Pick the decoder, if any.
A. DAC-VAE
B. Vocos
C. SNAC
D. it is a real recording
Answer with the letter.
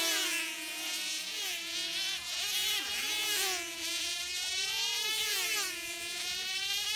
B